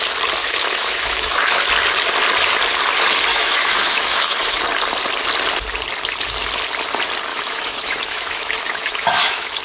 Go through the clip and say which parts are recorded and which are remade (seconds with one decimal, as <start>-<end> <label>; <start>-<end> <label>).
0.0-0.4 recorded; 0.4-1.6 remade; 1.6-3.3 recorded; 3.3-4.6 remade; 4.6-7.3 recorded; 7.3-9.6 remade